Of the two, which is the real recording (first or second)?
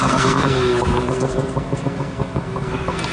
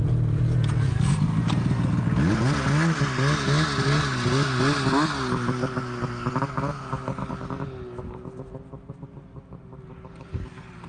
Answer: second